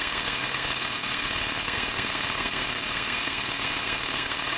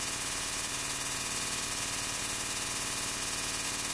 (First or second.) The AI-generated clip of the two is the first